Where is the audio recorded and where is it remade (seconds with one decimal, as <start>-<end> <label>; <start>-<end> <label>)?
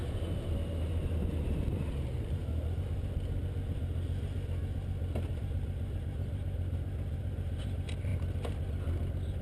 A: 0.0-0.7 recorded; 0.7-2.4 remade; 2.4-5.3 recorded; 5.3-8.1 remade; 8.1-9.4 recorded